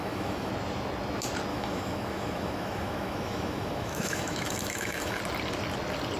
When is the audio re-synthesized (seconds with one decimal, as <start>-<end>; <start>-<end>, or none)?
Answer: 0.0-0.5; 1.5-5.2